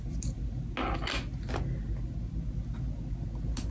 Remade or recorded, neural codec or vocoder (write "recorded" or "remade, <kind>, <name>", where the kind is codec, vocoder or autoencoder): recorded